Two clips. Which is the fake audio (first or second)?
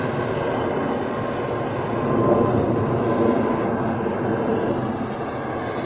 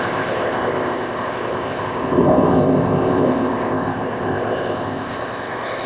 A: second